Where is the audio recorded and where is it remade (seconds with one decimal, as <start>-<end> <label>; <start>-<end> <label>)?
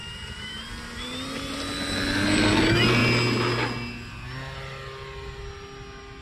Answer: 0.0-0.7 remade; 0.7-6.2 recorded